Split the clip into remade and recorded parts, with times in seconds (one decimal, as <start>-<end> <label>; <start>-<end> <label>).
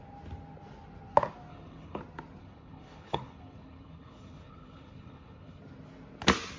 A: 0.0-1.5 recorded; 1.5-2.0 remade; 2.0-2.4 recorded; 2.4-5.6 remade; 5.6-6.6 recorded